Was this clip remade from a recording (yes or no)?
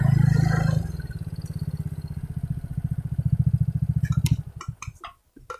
no